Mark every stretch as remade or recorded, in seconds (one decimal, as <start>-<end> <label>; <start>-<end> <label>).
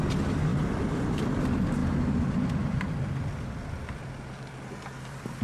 0.0-5.4 remade